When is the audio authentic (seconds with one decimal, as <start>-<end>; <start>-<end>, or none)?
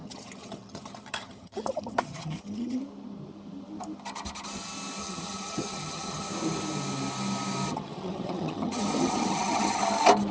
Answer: 2.8-5.0; 6.3-7.7; 9.8-10.3